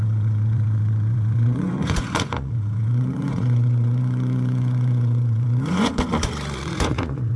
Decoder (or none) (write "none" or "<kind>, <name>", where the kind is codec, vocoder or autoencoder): vocoder, Vocos